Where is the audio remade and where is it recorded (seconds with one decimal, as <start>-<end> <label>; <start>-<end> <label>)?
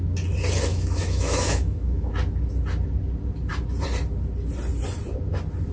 0.0-0.7 recorded; 0.7-2.1 remade; 2.1-5.7 recorded